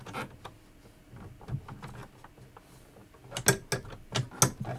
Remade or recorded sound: recorded